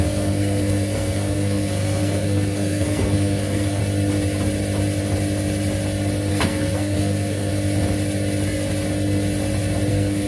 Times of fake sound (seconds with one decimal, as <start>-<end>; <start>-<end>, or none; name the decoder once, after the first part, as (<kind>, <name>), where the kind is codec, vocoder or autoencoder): 0.0-3.8 (codec, SNAC); 6.3-7.5; 9.9-10.3